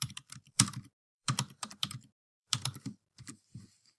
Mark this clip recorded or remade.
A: remade